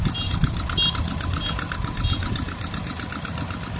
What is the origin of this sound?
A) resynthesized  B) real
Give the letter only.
B